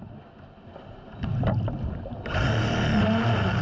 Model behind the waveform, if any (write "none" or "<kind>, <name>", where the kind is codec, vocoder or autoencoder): none